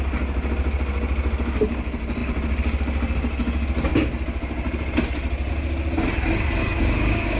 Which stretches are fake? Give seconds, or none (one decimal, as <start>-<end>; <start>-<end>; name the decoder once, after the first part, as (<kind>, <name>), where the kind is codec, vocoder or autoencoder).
6.6-7.4 (codec, DAC)